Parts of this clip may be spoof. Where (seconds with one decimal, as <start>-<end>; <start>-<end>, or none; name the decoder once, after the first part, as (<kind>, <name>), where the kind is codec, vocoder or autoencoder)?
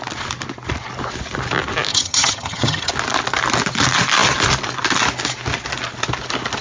1.9-2.9 (vocoder, HiFi-GAN)